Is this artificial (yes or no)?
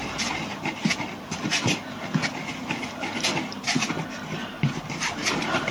no